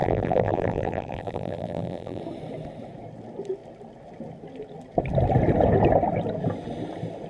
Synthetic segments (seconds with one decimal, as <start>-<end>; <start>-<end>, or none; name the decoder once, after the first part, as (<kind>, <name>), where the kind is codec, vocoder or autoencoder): 0.0-2.2 (vocoder, BigVGAN v2)

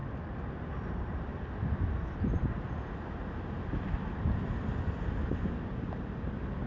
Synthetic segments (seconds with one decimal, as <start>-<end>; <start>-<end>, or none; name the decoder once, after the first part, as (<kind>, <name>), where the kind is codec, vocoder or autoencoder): none